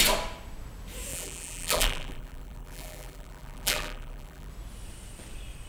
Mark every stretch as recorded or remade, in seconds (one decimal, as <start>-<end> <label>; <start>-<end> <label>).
0.0-1.1 recorded; 1.1-4.5 remade; 4.5-5.7 recorded